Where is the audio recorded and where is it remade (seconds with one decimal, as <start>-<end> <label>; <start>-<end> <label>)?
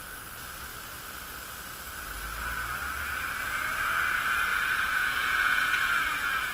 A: 0.0-4.5 recorded; 4.5-6.5 remade